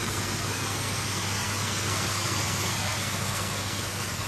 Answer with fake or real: fake